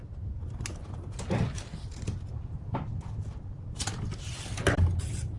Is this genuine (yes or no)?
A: yes